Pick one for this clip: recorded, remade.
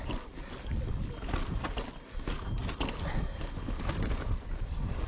recorded